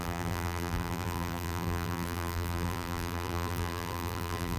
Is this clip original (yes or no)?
no